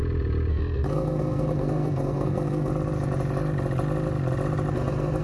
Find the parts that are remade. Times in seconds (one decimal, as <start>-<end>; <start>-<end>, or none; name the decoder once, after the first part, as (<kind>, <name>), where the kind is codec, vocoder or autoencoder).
0.5-2.7 (codec, SNAC); 4.7-5.2